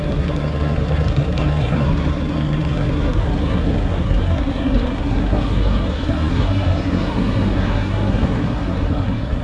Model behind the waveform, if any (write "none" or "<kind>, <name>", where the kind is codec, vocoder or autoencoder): codec, SNAC